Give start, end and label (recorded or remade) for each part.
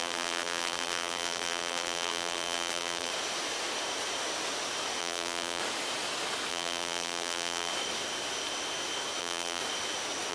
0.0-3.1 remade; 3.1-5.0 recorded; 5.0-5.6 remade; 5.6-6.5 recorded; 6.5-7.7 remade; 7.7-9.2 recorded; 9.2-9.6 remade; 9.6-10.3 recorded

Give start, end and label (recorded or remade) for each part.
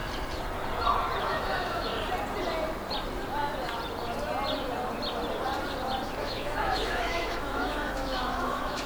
0.0-1.2 recorded; 1.2-1.9 remade; 1.9-6.2 recorded; 6.2-8.9 remade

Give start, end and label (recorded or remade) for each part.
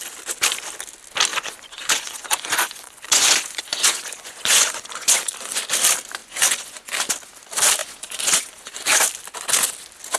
0.0-1.3 recorded; 1.3-5.6 remade; 5.6-6.2 recorded; 6.2-6.9 remade; 6.9-7.8 recorded; 7.8-9.0 remade; 9.0-10.2 recorded